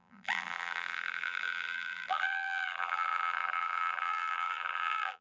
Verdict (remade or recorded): remade